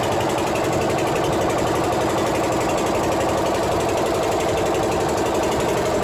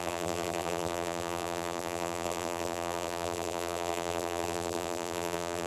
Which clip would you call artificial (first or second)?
second